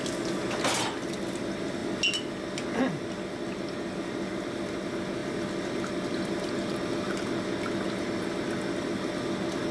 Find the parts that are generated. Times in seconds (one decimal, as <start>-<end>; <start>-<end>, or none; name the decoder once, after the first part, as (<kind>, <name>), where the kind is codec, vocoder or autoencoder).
none